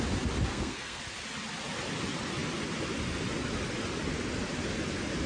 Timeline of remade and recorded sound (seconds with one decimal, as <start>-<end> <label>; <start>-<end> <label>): 0.0-0.5 recorded; 0.5-1.0 remade; 1.0-5.3 recorded